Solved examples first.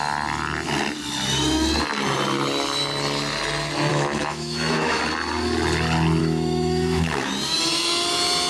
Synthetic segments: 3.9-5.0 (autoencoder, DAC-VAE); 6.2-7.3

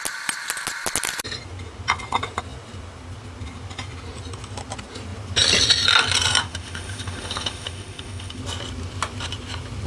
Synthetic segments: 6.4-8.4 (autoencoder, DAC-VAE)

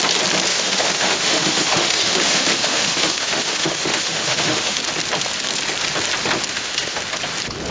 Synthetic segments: 0.5-4.8 (autoencoder, DAC-VAE); 6.5-7.0

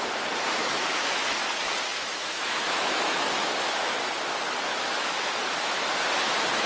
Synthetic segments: 0.6-1.2 (autoencoder, DAC-VAE); 1.9-4.2; 4.7-5.9